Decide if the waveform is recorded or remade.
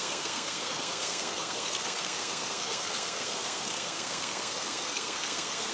remade